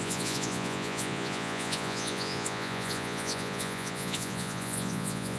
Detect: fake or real fake